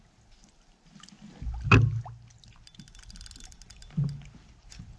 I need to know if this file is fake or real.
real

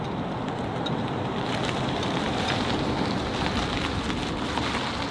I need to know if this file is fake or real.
real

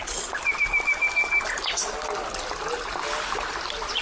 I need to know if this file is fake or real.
real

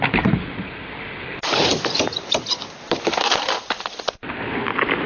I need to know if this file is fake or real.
real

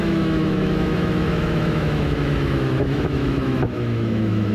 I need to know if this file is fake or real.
fake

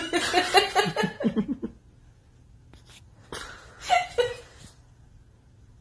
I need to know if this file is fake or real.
real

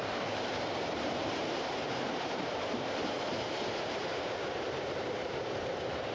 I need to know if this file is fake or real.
fake